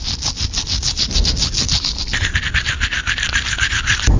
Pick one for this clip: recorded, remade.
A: recorded